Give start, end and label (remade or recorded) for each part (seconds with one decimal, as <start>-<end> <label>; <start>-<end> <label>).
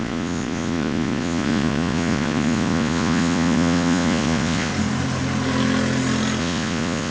0.0-4.7 remade; 4.7-6.4 recorded; 6.4-7.1 remade